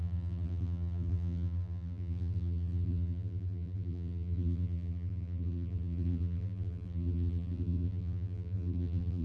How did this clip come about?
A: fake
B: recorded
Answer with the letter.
A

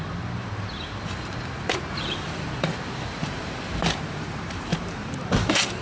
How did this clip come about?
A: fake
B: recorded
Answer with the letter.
A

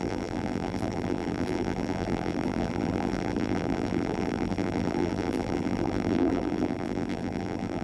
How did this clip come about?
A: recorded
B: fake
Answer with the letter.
B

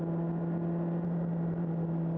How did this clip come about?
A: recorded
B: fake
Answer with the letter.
A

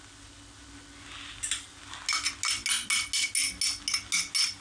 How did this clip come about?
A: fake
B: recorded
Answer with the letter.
B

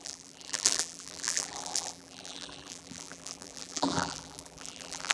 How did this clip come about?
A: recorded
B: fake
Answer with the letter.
B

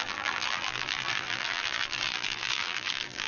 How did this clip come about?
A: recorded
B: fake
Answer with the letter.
B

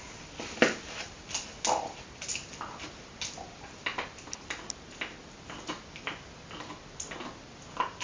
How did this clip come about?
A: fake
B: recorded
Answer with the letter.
B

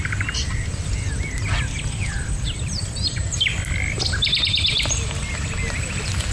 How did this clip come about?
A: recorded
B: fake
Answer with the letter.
B